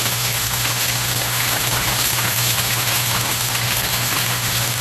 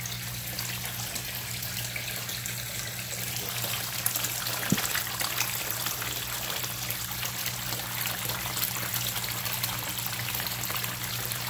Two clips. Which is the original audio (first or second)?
second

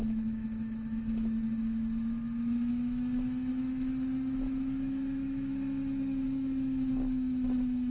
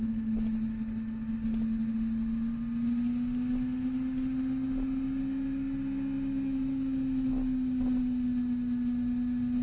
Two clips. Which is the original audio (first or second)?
second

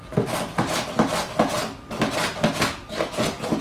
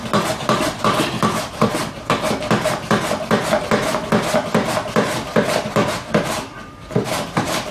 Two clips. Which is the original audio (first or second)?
first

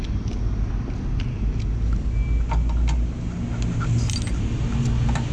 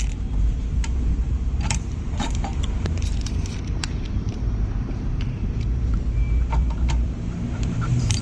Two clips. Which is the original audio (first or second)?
first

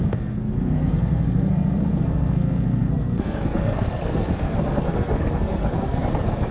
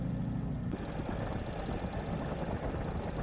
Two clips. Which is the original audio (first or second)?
second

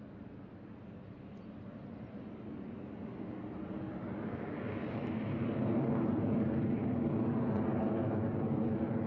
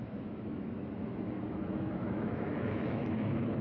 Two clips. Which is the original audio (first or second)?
first